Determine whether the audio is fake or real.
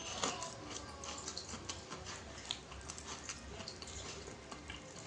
real